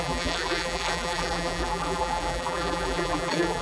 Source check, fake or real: fake